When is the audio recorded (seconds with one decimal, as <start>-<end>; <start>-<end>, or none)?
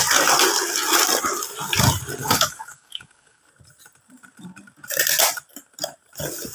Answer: 0.0-2.2; 3.4-6.5